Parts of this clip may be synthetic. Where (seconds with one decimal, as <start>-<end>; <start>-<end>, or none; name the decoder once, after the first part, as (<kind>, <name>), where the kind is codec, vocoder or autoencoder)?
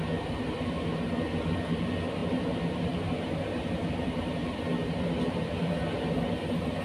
2.2-4.6 (vocoder, BigVGAN v2)